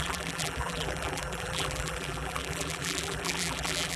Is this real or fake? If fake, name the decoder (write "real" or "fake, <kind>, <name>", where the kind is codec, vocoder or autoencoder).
fake, vocoder, BigVGAN v2